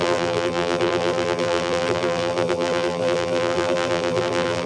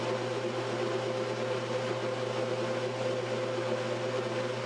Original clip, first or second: second